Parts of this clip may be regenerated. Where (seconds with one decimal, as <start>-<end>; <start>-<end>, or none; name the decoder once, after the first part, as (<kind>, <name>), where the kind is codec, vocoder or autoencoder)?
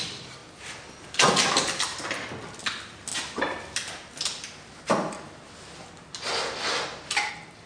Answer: none